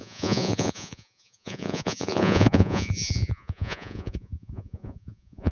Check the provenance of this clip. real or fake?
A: fake